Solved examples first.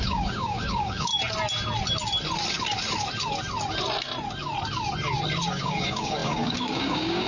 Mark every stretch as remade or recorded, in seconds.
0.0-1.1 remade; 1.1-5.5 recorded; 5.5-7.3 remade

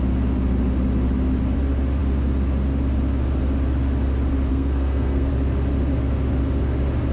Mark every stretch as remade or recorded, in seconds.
0.0-4.5 recorded; 4.5-5.3 remade; 5.3-7.1 recorded

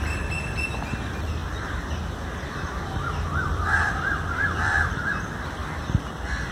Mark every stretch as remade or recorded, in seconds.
0.0-1.4 recorded; 1.4-5.0 remade; 5.0-5.6 recorded; 5.6-6.1 remade; 6.1-6.5 recorded

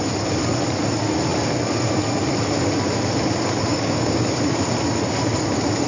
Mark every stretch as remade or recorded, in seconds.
0.0-3.7 recorded; 3.7-4.2 remade; 4.2-5.9 recorded

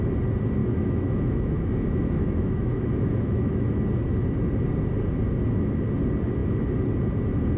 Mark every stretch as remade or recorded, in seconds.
0.0-0.6 recorded; 0.6-3.7 remade; 3.7-7.6 recorded

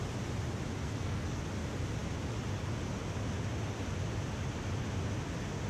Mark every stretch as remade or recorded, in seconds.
0.0-0.8 recorded; 0.8-1.4 remade; 1.4-5.7 recorded

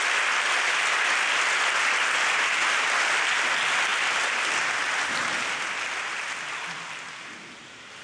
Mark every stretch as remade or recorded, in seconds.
0.0-8.0 recorded

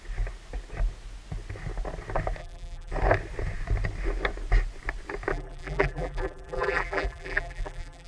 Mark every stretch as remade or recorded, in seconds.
0.0-2.4 recorded; 2.4-2.9 remade; 2.9-5.3 recorded; 5.3-8.1 remade